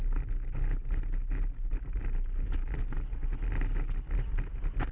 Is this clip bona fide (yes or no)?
yes